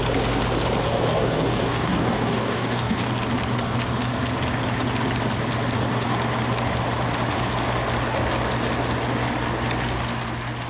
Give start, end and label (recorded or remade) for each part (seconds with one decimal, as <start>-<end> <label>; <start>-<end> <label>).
0.0-0.9 recorded; 0.9-3.1 remade; 3.1-10.7 recorded